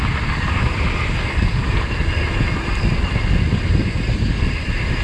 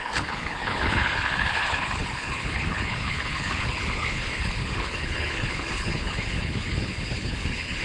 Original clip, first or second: first